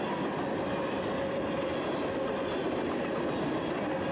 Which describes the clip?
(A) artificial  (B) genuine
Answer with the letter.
B